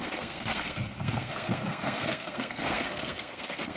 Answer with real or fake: fake